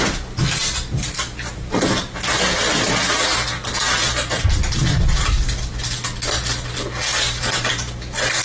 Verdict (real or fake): real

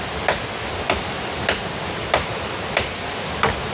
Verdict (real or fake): real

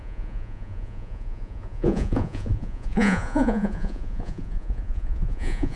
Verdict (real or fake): fake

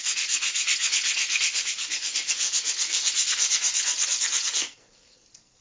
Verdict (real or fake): fake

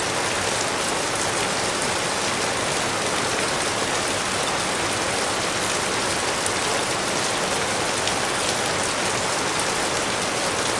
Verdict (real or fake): real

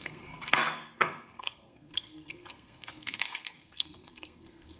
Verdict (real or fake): fake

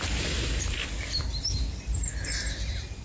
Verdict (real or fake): real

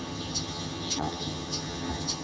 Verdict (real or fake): fake